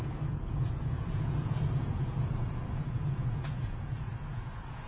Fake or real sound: fake